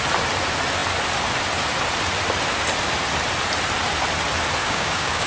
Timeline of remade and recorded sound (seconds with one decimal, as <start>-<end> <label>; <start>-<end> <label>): 0.0-4.6 recorded; 4.6-5.3 remade